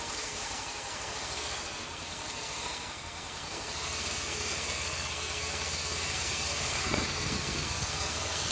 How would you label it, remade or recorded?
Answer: remade